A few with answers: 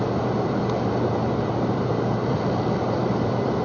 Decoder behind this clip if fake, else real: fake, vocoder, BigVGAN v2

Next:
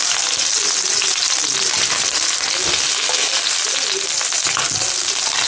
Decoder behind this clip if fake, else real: real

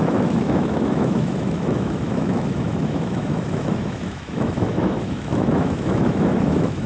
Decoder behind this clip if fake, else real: fake, autoencoder, DAC-VAE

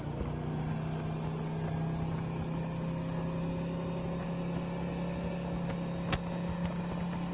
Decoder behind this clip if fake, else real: real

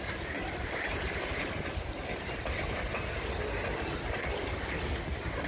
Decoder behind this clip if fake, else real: real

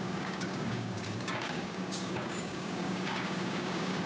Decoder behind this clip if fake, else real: fake, codec, DAC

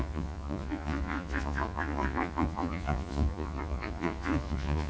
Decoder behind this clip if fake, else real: fake, vocoder, Vocos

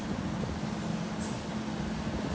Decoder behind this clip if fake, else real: real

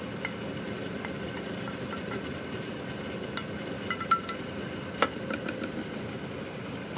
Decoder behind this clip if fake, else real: real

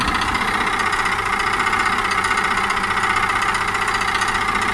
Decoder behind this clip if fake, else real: real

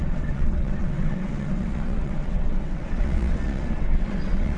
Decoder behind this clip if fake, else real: fake, vocoder, WaveNeXt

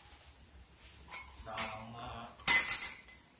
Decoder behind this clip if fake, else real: real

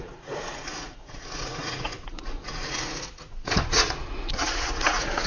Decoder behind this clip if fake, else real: fake, vocoder, Vocos